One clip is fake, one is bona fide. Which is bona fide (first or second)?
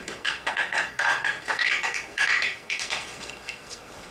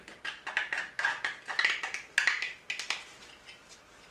second